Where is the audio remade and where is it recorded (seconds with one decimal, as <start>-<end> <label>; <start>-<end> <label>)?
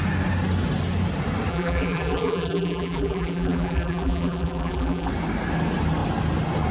0.0-1.5 recorded; 1.5-5.1 remade; 5.1-6.7 recorded